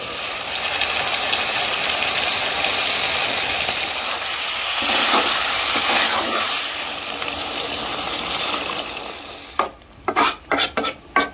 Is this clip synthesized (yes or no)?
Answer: no